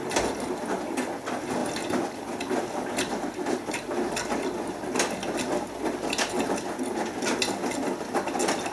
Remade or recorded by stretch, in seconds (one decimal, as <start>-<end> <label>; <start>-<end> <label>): 0.0-8.7 recorded